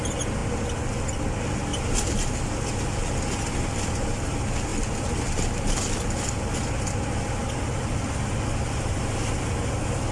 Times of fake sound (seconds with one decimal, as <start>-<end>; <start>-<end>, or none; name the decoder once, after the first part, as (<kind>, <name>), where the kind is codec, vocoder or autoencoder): none